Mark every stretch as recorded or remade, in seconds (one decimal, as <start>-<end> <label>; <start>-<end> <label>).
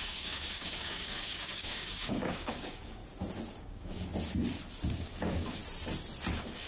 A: 0.0-3.0 remade; 3.0-3.6 recorded; 3.6-4.1 remade; 4.1-4.9 recorded; 4.9-5.6 remade; 5.6-6.3 recorded; 6.3-6.7 remade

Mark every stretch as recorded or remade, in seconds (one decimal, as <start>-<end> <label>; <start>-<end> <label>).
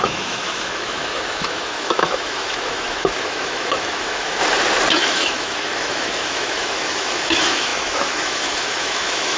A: 0.0-4.4 remade; 4.4-4.9 recorded; 4.9-9.4 remade